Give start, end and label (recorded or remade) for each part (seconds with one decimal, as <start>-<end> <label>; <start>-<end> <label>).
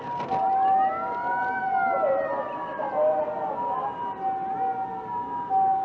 0.0-5.8 recorded